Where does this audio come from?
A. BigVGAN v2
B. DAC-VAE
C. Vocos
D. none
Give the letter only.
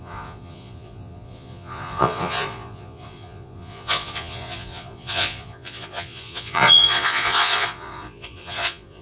C